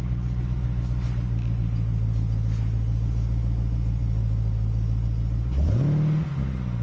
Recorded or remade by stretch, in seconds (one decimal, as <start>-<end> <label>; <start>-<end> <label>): 0.0-6.8 recorded

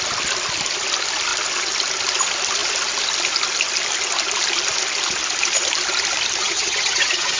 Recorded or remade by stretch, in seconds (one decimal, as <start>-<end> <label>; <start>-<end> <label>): 0.0-6.4 recorded; 6.4-7.4 remade

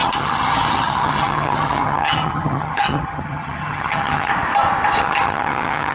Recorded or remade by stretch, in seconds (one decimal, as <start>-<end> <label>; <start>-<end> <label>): 0.0-4.3 remade; 4.3-5.0 recorded; 5.0-5.9 remade

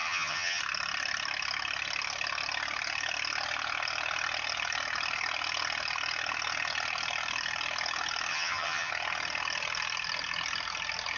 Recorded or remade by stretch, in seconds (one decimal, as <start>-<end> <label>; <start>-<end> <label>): 0.0-0.6 remade; 0.6-8.3 recorded; 8.3-8.9 remade; 8.9-11.2 recorded

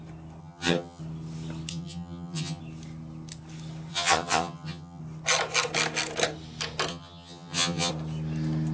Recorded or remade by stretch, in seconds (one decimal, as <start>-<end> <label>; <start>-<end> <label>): 0.0-0.4 recorded; 0.4-1.0 remade; 1.0-1.7 recorded; 1.7-2.6 remade; 2.6-3.9 recorded; 3.9-5.0 remade; 5.0-6.9 recorded; 6.9-7.9 remade; 7.9-8.7 recorded

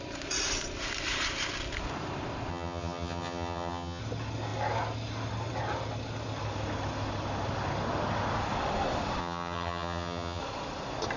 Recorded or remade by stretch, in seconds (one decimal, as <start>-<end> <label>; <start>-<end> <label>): 0.0-2.5 recorded; 2.5-4.0 remade; 4.0-9.2 recorded; 9.2-10.4 remade; 10.4-11.2 recorded